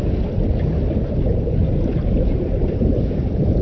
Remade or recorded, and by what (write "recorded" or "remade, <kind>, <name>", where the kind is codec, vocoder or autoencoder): recorded